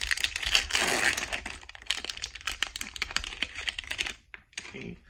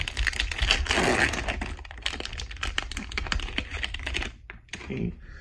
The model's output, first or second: first